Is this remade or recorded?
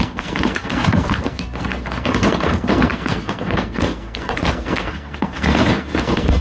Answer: remade